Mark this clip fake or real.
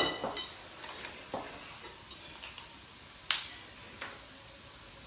real